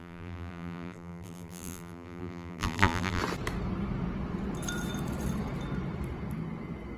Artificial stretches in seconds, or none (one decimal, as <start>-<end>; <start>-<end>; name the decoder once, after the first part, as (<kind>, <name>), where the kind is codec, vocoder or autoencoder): 0.0-3.2 (vocoder, BigVGAN v2)